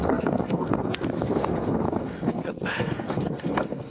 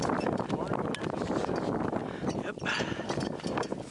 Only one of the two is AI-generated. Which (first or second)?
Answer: first